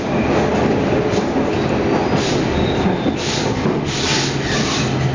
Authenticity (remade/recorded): recorded